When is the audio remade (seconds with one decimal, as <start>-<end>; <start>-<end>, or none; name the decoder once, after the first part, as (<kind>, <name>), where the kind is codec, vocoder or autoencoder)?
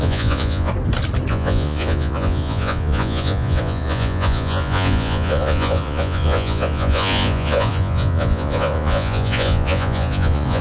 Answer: 0.0-0.7 (vocoder, Vocos); 1.3-10.6